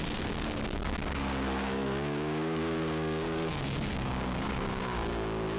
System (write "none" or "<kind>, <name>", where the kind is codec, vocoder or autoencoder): codec, DAC